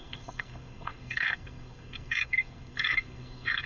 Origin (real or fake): fake